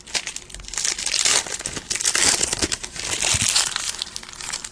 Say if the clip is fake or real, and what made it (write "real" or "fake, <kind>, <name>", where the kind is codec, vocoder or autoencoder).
real